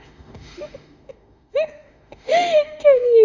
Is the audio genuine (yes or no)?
no